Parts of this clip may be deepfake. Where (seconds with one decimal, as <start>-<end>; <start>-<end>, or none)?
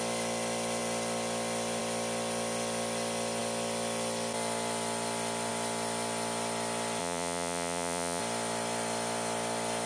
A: 7.0-8.2